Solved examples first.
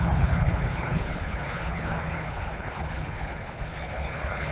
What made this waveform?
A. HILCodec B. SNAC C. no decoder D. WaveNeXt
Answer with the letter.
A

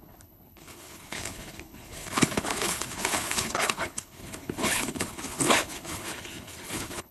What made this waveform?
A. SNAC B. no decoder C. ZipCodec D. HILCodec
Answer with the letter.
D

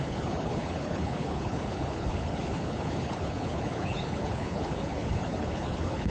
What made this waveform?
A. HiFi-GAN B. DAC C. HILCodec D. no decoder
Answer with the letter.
C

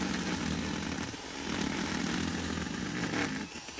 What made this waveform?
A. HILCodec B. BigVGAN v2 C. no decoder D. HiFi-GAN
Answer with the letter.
C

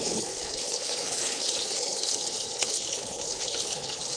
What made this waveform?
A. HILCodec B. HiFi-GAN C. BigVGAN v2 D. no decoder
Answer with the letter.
A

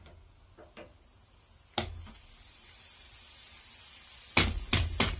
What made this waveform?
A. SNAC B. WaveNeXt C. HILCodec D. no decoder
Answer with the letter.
D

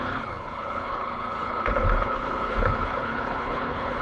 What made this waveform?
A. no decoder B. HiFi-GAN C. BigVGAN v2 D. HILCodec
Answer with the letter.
D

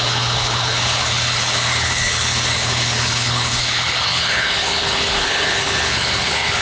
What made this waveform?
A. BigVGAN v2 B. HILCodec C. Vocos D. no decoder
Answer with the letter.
B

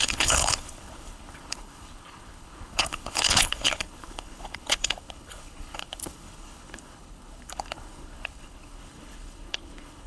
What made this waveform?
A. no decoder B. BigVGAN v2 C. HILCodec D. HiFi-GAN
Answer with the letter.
C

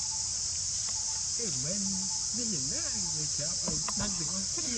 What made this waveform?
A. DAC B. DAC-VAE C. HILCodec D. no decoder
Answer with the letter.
D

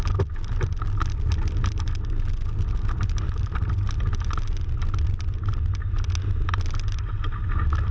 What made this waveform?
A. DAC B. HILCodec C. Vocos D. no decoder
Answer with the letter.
D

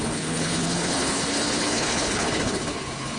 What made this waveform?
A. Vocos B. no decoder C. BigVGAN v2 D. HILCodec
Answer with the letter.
D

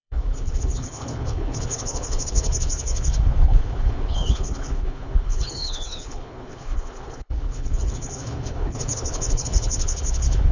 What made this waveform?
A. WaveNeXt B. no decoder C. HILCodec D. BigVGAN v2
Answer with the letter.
C